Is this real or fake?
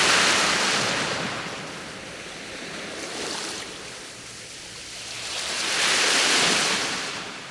real